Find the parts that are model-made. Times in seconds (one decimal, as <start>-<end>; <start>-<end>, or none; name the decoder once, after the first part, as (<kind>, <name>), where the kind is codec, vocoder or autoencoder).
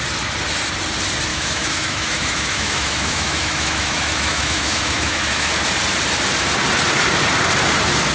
1.3-5.5 (autoencoder, DAC-VAE)